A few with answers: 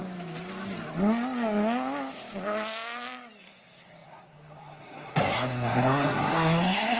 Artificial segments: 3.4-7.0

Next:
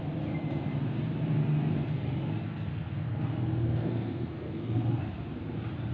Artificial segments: 1.7-5.1